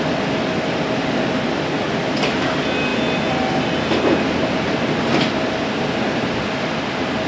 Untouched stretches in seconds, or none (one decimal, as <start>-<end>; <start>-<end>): 0.0-7.3

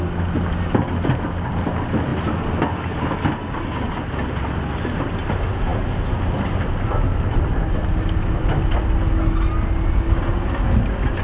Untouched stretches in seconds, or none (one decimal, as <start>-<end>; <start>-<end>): 0.0-11.2

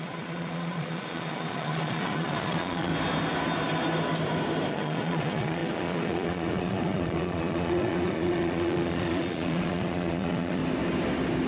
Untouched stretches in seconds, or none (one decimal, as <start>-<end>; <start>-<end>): 2.9-4.7; 10.6-11.5

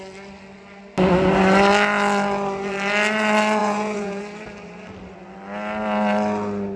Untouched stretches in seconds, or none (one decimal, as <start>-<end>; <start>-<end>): 0.0-3.6; 4.2-6.8